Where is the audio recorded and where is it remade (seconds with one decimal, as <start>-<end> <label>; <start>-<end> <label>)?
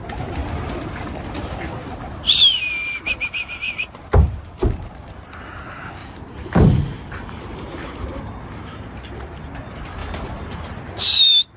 0.0-6.0 recorded; 6.0-8.2 remade; 8.2-10.0 recorded; 10.0-11.0 remade; 11.0-11.6 recorded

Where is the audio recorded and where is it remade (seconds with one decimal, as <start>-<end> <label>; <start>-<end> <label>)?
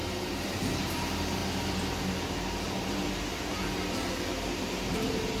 0.0-1.4 remade; 1.4-4.6 recorded; 4.6-5.4 remade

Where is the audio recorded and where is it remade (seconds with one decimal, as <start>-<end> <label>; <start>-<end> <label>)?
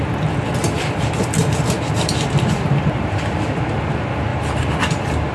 0.0-0.6 recorded; 0.6-2.7 remade; 2.7-4.3 recorded; 4.3-4.8 remade; 4.8-5.3 recorded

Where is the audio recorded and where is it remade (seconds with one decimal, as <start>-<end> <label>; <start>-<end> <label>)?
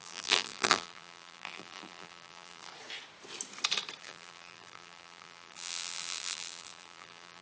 0.0-2.7 remade; 2.7-4.0 recorded; 4.0-7.4 remade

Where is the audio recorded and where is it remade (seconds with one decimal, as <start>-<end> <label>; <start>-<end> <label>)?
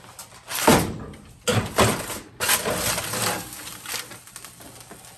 0.0-0.7 recorded; 0.7-2.1 remade; 2.1-5.2 recorded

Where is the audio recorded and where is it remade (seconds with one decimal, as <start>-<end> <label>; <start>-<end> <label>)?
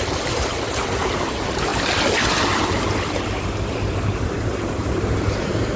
0.0-1.7 remade; 1.7-4.0 recorded; 4.0-5.8 remade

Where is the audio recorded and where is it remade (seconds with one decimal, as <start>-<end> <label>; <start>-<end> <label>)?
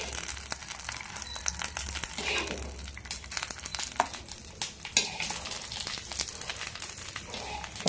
0.0-7.9 recorded